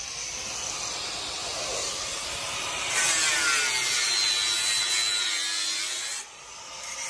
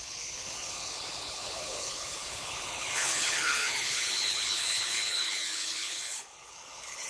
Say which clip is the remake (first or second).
second